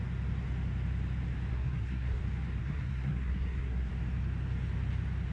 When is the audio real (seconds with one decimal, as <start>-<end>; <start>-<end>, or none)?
0.0-1.5; 2.2-2.6; 3.9-5.3